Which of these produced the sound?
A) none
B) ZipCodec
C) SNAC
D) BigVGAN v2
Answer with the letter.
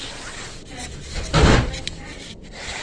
A